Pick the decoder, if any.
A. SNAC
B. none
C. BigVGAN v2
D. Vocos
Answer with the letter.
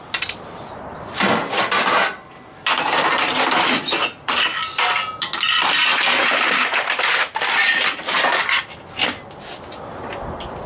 B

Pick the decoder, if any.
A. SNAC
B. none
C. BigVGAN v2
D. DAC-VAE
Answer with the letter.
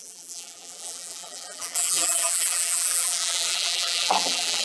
C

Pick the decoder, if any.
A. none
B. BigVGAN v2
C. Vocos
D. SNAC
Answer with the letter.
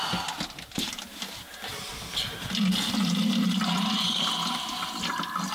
A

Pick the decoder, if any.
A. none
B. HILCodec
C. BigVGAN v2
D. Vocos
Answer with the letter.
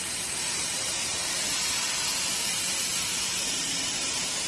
C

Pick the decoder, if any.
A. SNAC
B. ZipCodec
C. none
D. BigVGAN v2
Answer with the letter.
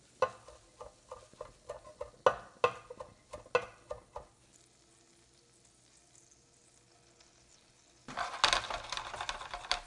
C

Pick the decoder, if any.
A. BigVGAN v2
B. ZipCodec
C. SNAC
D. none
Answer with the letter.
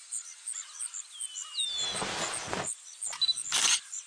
D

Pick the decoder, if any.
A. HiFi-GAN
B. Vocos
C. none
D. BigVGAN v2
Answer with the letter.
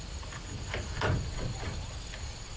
C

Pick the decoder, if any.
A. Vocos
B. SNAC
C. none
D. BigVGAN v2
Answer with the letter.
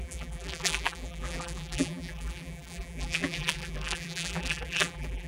D